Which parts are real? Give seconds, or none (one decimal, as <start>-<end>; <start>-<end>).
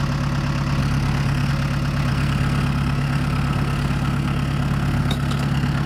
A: 0.0-0.8; 1.5-2.1